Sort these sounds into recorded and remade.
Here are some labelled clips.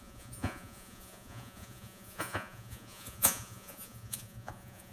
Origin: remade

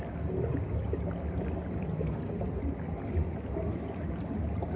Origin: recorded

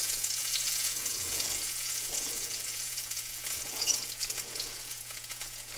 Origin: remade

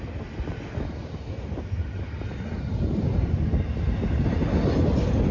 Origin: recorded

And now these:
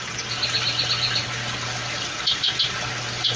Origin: recorded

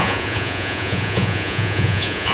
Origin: remade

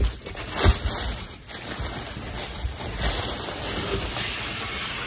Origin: recorded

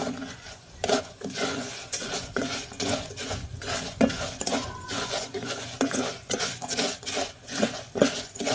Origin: remade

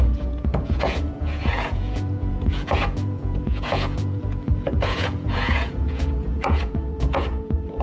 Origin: remade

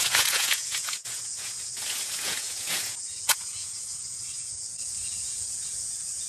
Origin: remade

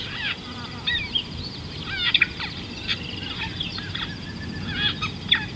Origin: recorded